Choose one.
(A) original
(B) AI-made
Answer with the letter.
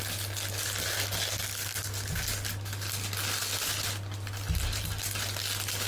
A